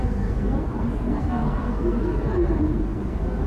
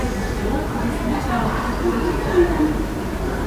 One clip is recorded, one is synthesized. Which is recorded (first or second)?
second